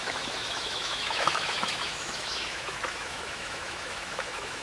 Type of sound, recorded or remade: remade